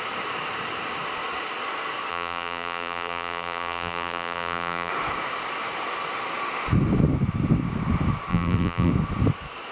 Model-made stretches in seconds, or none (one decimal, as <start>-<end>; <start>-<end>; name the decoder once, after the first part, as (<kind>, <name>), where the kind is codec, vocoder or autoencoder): 2.1-4.9 (vocoder, BigVGAN v2); 8.3-8.9